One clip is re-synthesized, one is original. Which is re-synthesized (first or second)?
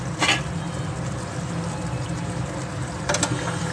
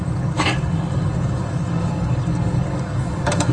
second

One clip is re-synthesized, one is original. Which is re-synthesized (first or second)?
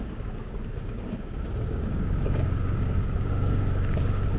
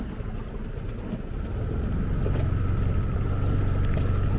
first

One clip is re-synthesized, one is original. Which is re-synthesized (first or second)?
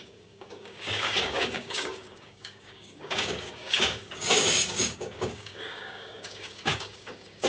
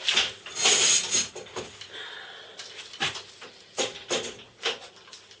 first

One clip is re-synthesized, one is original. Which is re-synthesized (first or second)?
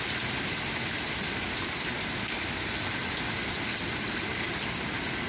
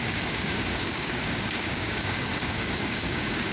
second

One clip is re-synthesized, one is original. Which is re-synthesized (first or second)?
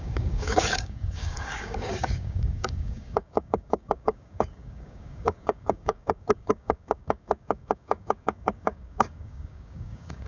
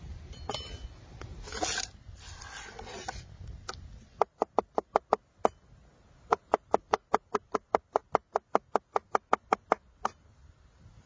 first